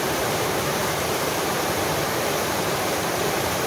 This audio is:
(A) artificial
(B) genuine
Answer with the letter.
A